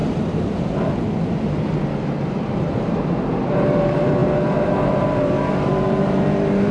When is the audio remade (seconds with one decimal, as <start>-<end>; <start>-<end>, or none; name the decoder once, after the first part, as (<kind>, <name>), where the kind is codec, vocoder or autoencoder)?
0.0-6.7 (vocoder, BigVGAN v2)